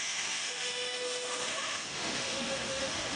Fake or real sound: fake